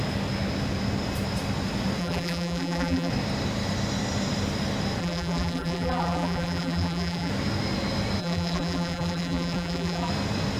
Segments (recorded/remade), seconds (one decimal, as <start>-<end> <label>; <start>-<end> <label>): 0.0-2.0 recorded; 2.0-3.1 remade; 3.1-5.0 recorded; 5.0-7.3 remade; 7.3-8.2 recorded; 8.2-10.1 remade; 10.1-10.6 recorded